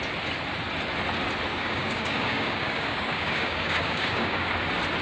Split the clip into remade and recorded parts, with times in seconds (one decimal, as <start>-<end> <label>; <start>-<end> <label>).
0.0-1.5 recorded; 1.5-4.5 remade; 4.5-5.0 recorded

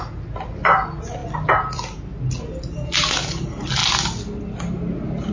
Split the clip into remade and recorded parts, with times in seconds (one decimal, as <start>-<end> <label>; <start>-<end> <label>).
0.0-5.3 recorded

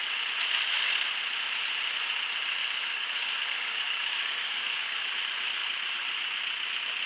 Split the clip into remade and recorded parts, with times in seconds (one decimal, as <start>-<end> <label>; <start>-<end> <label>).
0.0-2.6 recorded; 2.6-5.1 remade; 5.1-7.1 recorded

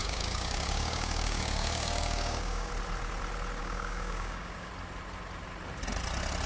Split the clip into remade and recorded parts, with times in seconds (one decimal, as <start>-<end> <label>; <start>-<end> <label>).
0.0-2.7 remade; 2.7-3.6 recorded; 3.6-4.7 remade; 4.7-6.5 recorded

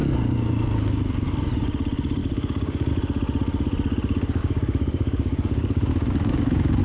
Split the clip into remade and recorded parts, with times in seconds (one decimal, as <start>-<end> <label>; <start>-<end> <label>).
0.0-2.2 recorded; 2.2-2.9 remade; 2.9-4.4 recorded; 4.4-6.8 remade

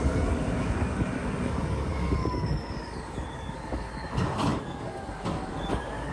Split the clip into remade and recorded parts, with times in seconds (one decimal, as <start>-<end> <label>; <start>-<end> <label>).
0.0-6.1 remade

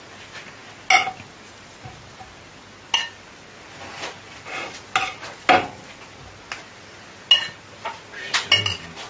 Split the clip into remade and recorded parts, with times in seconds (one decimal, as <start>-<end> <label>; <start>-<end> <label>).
0.0-9.1 recorded